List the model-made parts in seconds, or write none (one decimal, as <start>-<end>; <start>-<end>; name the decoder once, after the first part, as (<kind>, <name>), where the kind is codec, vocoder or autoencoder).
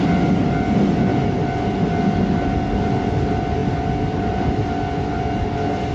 none